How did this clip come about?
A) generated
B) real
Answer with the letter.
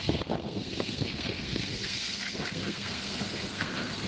A